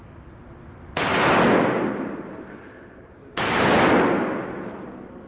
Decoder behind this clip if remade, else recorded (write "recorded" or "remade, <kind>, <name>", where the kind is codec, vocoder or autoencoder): recorded